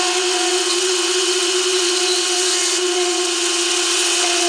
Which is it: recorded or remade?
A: remade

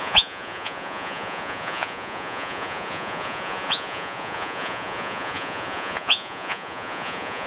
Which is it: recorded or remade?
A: remade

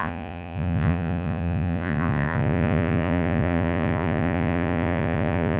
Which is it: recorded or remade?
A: remade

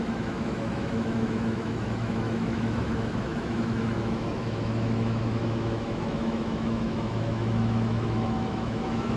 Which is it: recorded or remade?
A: remade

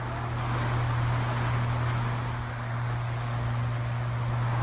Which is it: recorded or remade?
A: recorded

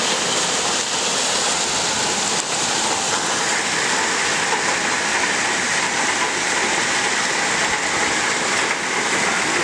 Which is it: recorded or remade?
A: recorded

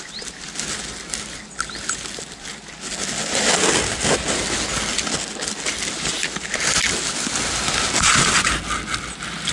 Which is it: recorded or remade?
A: recorded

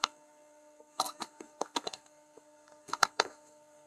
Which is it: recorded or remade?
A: remade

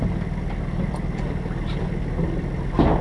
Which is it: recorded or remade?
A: recorded